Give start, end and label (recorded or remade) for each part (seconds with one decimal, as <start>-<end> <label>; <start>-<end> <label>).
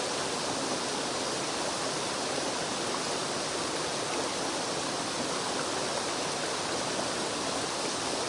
0.0-8.3 recorded